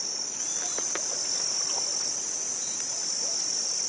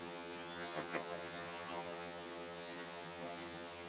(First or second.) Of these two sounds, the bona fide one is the first